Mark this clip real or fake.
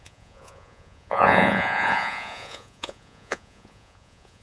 fake